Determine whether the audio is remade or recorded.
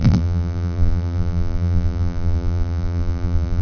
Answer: remade